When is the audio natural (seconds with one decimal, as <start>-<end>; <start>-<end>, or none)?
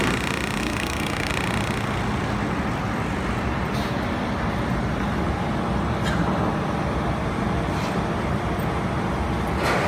0.0-0.6; 1.3-9.9